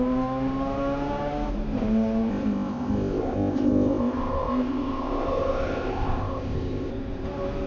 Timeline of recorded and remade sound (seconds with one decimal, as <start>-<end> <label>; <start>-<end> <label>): 0.0-2.3 recorded; 2.3-6.9 remade; 6.9-7.7 recorded